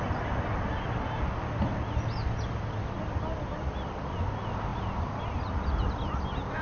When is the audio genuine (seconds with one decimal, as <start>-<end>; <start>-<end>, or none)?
0.0-6.6